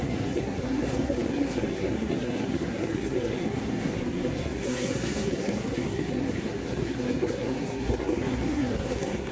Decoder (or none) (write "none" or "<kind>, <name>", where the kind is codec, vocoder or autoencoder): codec, SNAC